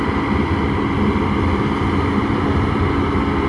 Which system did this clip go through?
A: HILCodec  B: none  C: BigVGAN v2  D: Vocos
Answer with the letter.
B